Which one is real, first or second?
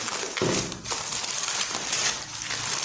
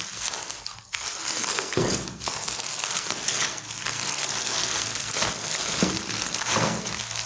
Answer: first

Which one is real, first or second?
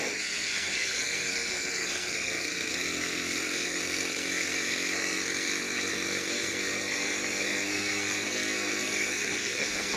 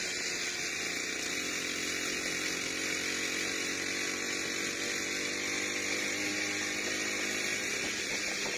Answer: second